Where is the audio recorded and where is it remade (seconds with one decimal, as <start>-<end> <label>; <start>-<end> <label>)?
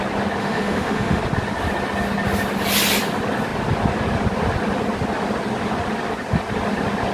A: 0.0-0.4 recorded; 0.4-1.2 remade; 1.2-7.1 recorded